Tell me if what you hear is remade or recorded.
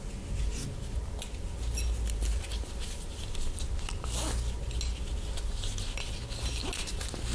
recorded